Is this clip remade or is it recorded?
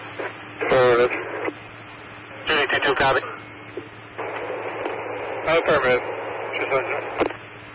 recorded